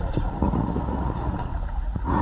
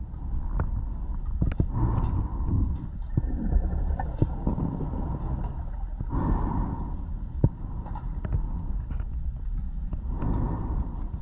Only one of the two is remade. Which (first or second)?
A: first